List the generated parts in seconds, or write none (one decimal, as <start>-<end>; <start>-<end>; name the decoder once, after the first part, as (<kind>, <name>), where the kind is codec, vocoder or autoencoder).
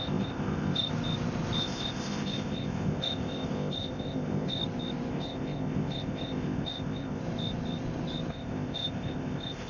0.0-0.9 (codec, ZipCodec); 1.6-4.6; 5.1-7.2; 8.3-9.7